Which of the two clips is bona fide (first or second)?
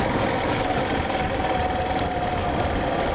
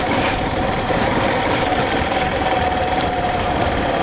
first